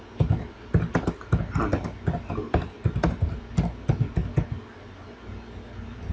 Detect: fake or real real